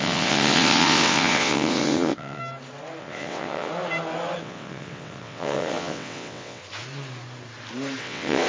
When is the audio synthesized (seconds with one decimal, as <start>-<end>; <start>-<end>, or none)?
0.0-2.4; 3.0-3.7; 4.4-6.6; 8.0-8.5